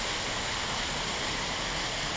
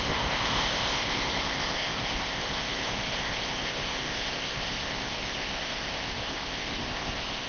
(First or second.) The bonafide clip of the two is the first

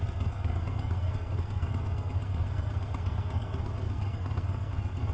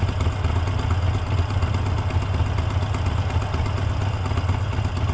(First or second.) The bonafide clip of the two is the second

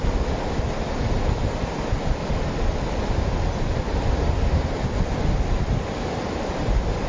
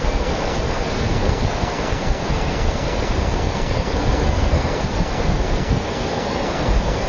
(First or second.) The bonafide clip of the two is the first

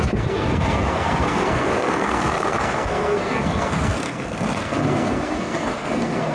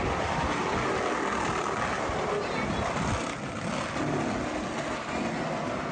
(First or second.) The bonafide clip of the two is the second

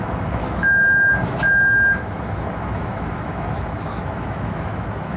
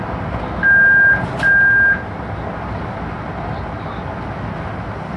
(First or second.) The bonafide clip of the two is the second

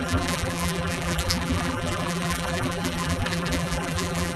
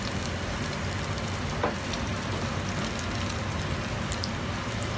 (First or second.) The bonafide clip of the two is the second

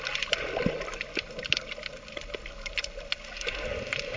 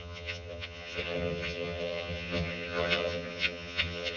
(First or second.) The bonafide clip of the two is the first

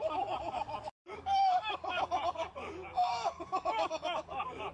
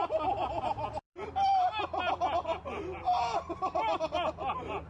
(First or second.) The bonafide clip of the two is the second